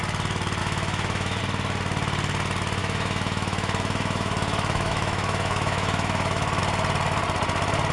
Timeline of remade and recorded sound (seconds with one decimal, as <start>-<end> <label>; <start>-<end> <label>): 0.0-0.6 recorded; 0.6-1.4 remade; 1.4-2.8 recorded; 2.8-6.6 remade; 6.6-7.9 recorded